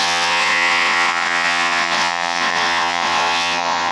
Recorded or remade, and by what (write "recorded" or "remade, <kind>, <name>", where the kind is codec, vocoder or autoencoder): remade, vocoder, WaveNeXt